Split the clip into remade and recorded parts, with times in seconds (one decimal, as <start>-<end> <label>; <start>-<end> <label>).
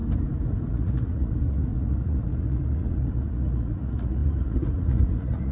0.0-0.7 recorded; 0.7-5.5 remade